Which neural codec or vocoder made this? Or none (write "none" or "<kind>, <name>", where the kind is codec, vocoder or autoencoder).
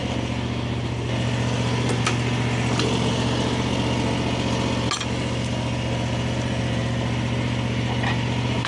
none